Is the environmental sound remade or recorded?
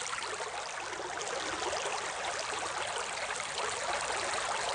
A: recorded